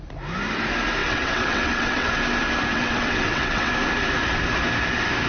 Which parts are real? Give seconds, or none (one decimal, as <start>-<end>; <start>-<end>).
0.0-1.0; 2.1-2.7; 3.7-5.3